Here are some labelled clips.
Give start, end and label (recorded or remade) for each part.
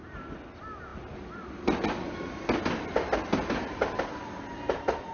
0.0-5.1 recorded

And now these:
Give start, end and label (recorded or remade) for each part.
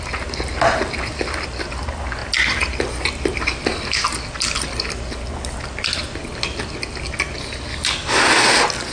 0.0-7.7 recorded; 7.7-8.3 remade; 8.3-8.9 recorded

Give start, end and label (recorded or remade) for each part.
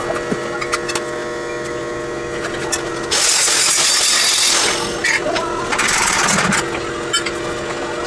0.0-8.1 recorded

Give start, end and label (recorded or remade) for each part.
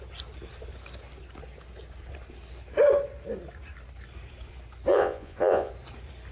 0.0-4.9 recorded; 4.9-5.7 remade; 5.7-6.3 recorded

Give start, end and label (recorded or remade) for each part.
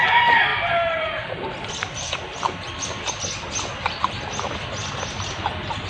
0.0-0.5 recorded; 0.5-3.1 remade; 3.1-5.9 recorded